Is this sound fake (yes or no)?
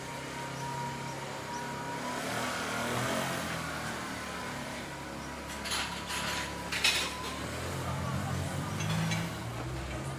no